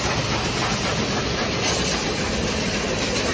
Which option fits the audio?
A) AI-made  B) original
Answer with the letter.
B